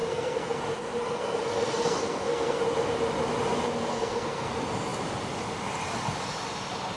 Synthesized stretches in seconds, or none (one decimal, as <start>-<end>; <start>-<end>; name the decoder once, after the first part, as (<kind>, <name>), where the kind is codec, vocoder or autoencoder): 0.0-0.6 (codec, SNAC); 1.0-2.6; 3.9-4.5